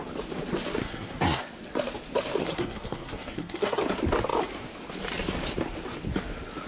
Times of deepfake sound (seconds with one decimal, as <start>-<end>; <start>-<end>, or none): 0.8-1.4; 2.4-3.8